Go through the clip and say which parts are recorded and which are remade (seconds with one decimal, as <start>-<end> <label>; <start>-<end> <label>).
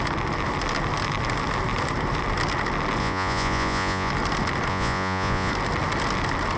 0.0-3.0 recorded; 3.0-4.1 remade; 4.1-4.7 recorded; 4.7-5.5 remade; 5.5-6.6 recorded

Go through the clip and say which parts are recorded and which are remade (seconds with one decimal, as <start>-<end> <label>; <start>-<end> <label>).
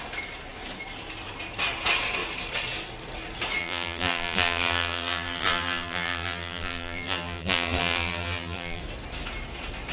0.0-3.6 recorded; 3.6-8.8 remade; 8.8-9.9 recorded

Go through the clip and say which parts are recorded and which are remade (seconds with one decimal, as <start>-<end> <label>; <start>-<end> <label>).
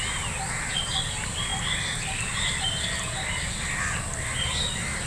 0.0-5.1 recorded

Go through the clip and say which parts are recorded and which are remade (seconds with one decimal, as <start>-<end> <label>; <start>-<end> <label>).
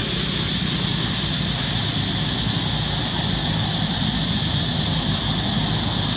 0.0-6.2 recorded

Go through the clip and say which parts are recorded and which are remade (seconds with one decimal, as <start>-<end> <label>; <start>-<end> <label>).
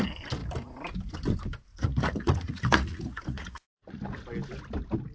0.0-1.7 recorded; 1.7-4.0 remade; 4.0-5.1 recorded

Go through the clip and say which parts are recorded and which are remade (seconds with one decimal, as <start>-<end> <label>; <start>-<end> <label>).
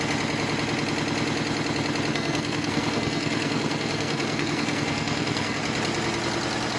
0.0-2.1 recorded; 2.1-5.6 remade; 5.6-6.8 recorded